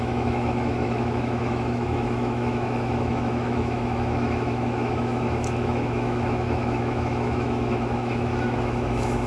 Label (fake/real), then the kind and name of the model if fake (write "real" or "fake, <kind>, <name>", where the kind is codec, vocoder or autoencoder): fake, autoencoder, DAC-VAE